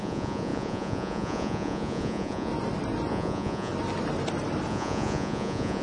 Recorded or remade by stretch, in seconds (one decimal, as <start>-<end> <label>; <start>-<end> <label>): 0.0-2.5 remade; 2.5-3.1 recorded; 3.1-3.7 remade; 3.7-4.7 recorded; 4.7-5.8 remade